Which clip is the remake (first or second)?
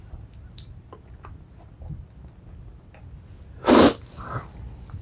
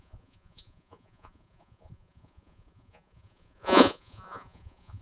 second